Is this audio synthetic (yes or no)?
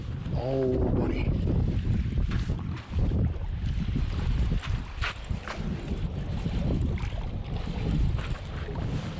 no